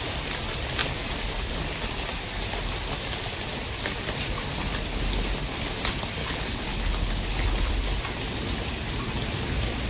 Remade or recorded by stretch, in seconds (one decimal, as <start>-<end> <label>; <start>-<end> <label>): 0.0-6.2 recorded; 6.2-7.7 remade; 7.7-9.9 recorded

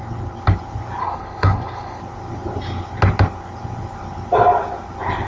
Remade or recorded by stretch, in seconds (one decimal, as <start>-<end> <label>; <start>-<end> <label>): 0.0-1.0 recorded; 1.0-2.0 remade; 2.0-5.3 recorded

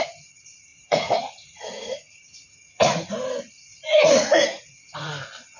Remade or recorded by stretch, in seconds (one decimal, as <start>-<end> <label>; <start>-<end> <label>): 0.0-0.7 recorded; 0.7-3.1 remade; 3.1-3.7 recorded; 3.7-5.1 remade; 5.1-5.6 recorded